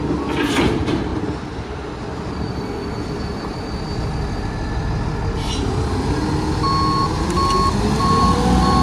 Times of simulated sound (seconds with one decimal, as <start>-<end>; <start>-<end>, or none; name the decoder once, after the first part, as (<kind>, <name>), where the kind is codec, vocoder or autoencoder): none

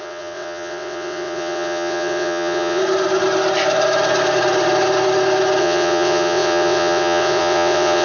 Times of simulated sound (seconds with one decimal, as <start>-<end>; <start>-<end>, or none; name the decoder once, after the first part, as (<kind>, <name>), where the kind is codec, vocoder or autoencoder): 0.0-2.8 (vocoder, WaveNeXt); 5.6-8.0

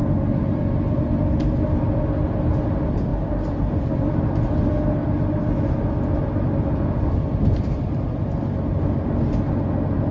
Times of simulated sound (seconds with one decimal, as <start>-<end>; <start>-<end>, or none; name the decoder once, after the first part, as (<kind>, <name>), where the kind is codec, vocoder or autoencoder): none

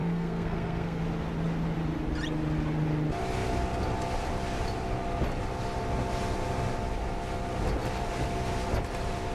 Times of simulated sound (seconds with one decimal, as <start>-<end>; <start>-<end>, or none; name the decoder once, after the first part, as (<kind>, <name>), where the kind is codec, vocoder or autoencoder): 0.0-1.0 (codec, SNAC)